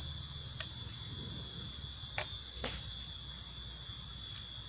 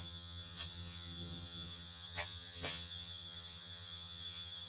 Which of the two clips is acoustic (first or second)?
first